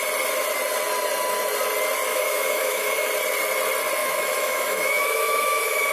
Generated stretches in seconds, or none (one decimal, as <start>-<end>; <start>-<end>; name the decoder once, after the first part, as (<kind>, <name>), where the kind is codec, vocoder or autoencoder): 2.1-3.1 (autoencoder, DAC-VAE); 4.0-5.9